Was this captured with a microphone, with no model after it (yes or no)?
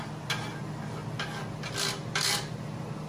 yes